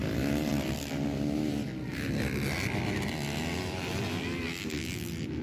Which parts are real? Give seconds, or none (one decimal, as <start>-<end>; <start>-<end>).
0.0-5.4